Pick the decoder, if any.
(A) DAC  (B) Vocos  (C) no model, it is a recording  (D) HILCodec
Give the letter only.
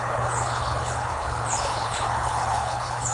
D